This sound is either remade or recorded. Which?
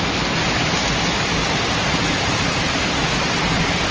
recorded